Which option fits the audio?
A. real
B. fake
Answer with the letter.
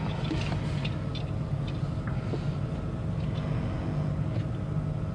A